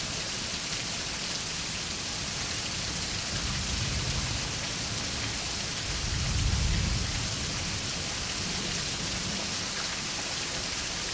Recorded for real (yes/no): yes